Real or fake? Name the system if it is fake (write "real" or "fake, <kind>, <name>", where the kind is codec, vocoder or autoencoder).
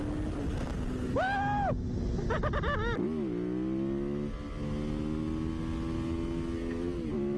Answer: real